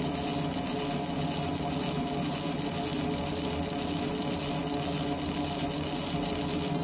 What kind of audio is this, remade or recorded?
recorded